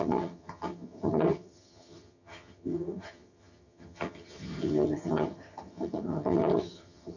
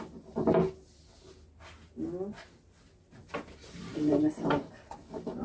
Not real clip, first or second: first